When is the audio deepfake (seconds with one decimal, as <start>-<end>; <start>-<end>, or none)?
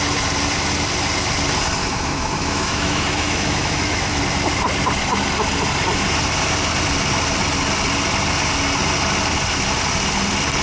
1.8-4.2